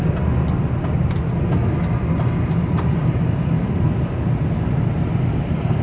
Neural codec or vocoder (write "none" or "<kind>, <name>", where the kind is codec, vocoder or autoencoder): none